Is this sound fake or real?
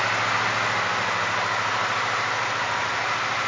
real